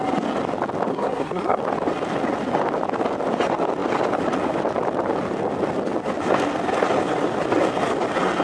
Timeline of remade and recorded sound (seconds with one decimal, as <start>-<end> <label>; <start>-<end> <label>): 0.0-0.9 recorded; 0.9-1.6 remade; 1.6-8.4 recorded

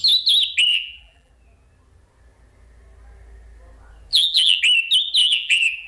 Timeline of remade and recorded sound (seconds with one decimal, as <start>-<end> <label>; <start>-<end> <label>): 0.0-0.7 recorded; 0.7-1.3 remade; 1.3-4.1 recorded; 4.1-4.6 remade; 4.6-5.2 recorded; 5.2-5.9 remade

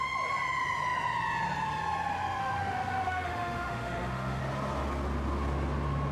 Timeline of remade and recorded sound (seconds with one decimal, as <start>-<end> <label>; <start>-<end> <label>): 0.0-2.4 recorded; 2.4-4.4 remade; 4.4-6.1 recorded

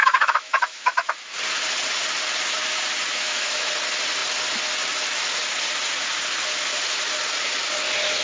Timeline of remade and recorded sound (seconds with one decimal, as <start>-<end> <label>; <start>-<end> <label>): 0.0-1.1 remade; 1.1-3.1 recorded; 3.1-3.7 remade; 3.7-8.2 recorded

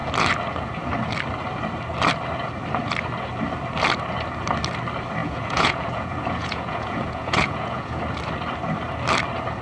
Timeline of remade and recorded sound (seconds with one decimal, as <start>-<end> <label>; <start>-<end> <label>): 0.0-5.2 recorded; 5.2-8.0 remade; 8.0-9.6 recorded

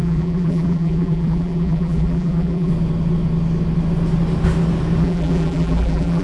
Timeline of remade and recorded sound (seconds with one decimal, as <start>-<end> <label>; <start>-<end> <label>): 0.0-2.7 remade; 2.7-5.0 recorded; 5.0-6.2 remade

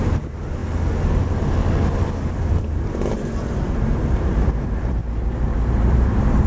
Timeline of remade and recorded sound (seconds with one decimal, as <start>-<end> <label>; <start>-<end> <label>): 0.0-0.6 remade; 0.6-2.4 recorded; 2.4-5.0 remade; 5.0-5.7 recorded; 5.7-6.5 remade